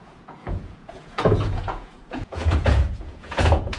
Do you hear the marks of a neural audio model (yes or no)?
yes